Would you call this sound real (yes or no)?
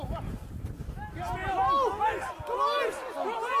yes